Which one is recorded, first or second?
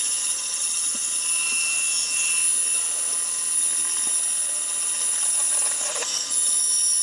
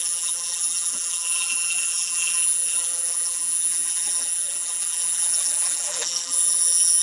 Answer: first